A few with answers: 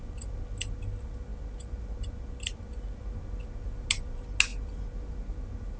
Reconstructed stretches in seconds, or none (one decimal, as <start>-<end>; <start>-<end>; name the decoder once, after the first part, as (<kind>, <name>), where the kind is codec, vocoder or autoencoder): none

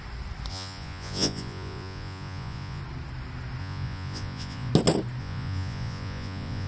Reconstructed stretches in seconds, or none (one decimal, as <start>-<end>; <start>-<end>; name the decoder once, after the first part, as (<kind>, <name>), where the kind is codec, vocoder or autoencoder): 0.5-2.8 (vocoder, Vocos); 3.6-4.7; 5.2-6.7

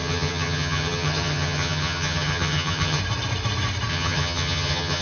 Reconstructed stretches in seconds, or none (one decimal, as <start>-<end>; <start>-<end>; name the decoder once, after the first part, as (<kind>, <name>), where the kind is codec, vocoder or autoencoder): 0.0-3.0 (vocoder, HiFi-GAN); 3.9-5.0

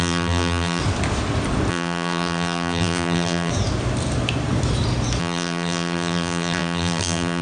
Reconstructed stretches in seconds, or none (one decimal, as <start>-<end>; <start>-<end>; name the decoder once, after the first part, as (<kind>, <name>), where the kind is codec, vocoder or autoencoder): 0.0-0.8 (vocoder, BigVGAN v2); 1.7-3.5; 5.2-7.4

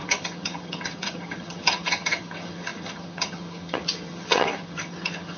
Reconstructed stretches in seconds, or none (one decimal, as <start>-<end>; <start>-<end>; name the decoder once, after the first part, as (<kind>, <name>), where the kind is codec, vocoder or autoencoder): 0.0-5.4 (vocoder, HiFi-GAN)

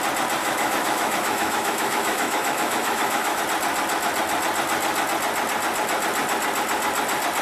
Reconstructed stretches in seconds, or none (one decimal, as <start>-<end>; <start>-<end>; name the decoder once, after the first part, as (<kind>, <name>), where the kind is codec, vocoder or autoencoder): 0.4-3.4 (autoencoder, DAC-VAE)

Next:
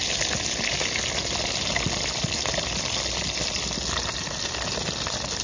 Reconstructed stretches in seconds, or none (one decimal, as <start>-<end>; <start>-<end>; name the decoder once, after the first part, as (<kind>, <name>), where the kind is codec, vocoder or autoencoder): none